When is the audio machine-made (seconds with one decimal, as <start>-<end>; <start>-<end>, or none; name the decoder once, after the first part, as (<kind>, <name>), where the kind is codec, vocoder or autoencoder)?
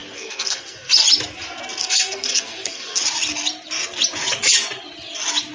0.0-0.9 (codec, SNAC); 1.8-3.0